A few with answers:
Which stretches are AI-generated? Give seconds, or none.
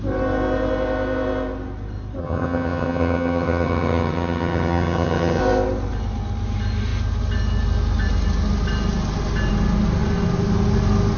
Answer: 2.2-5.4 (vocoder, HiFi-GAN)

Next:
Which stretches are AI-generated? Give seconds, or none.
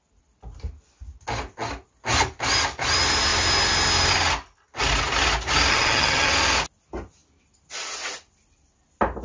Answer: 5.7-6.3 (vocoder, HiFi-GAN)